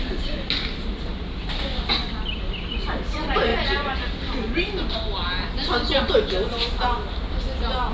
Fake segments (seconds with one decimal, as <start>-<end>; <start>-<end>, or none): none